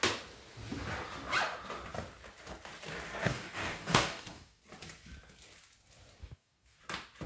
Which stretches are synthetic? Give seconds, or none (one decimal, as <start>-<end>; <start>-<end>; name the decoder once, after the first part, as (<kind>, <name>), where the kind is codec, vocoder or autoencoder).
3.2-4.6 (codec, DAC); 6.2-6.8